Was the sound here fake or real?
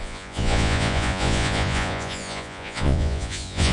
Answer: fake